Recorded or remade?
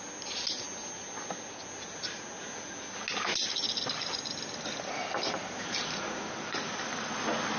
recorded